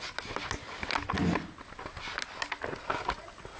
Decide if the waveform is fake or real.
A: real